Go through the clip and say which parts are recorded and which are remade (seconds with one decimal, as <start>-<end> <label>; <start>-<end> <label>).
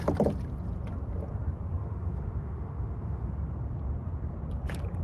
0.0-1.8 recorded; 1.8-3.3 remade; 3.3-5.0 recorded